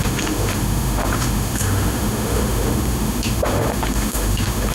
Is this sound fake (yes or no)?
yes